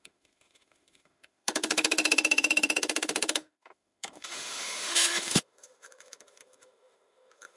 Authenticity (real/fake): fake